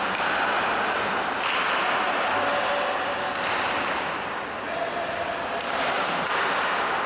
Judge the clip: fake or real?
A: real